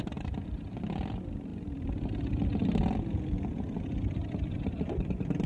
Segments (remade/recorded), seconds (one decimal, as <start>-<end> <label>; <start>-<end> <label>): 0.0-5.5 remade